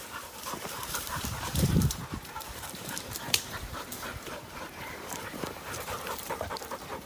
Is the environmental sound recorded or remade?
remade